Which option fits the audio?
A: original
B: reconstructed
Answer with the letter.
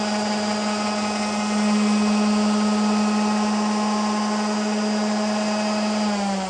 A